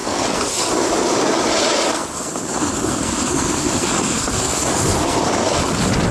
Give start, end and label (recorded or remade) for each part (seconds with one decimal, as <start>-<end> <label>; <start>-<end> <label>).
0.0-0.7 remade; 0.7-1.9 recorded; 1.9-5.6 remade; 5.6-6.1 recorded